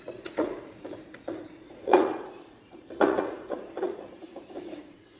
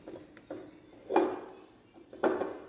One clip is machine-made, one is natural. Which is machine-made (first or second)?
first